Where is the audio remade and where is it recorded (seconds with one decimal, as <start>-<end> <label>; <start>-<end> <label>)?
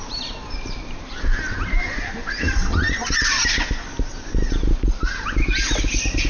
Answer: 0.0-6.3 recorded